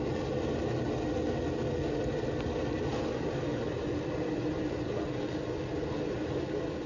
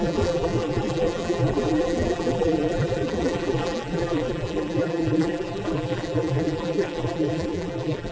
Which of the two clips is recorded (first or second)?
first